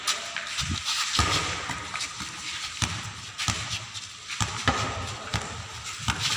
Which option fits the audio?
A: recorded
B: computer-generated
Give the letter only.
A